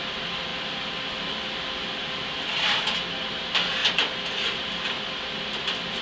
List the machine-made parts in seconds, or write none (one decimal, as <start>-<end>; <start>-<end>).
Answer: none